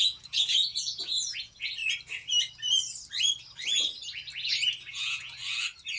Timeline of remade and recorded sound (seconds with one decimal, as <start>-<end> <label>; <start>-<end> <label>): 0.0-1.8 remade; 1.8-4.9 recorded; 4.9-5.4 remade; 5.4-6.0 recorded